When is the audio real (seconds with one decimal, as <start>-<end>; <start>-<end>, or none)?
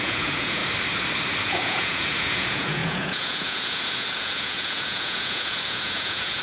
0.6-1.4